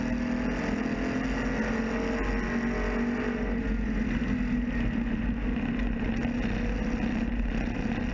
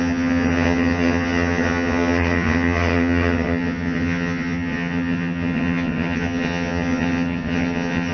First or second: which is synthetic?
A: second